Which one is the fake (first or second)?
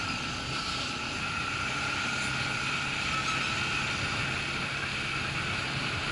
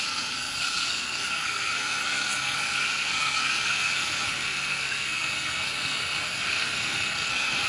second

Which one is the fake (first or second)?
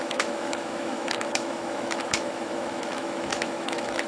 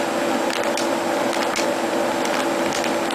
first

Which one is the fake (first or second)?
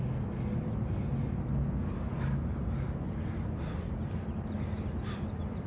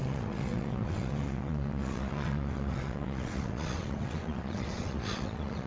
second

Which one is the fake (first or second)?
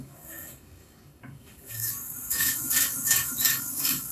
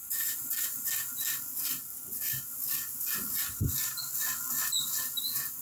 first